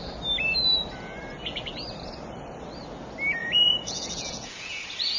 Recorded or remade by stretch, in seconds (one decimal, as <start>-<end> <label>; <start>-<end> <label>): 0.0-3.4 recorded; 3.4-4.8 remade; 4.8-5.2 recorded